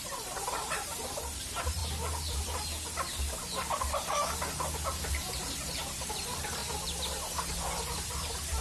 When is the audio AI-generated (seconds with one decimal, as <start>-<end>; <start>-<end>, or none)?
0.0-1.8; 5.1-6.6; 8.1-8.6